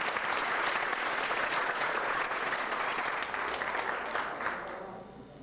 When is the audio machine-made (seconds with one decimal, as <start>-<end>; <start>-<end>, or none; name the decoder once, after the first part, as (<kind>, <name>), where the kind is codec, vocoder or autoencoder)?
0.4-3.2 (vocoder, Vocos)